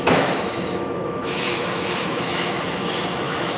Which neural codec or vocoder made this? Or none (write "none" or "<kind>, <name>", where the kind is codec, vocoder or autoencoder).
autoencoder, DAC-VAE